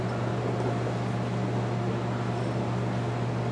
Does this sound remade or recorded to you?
recorded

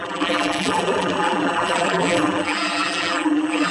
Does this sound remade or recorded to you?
remade